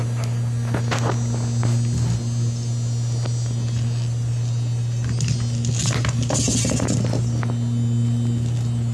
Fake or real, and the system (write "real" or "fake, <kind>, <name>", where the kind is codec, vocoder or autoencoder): real